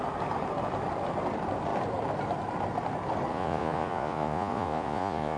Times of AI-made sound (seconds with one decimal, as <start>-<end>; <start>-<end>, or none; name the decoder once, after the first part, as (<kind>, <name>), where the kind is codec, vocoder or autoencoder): 3.3-5.4 (vocoder, Vocos)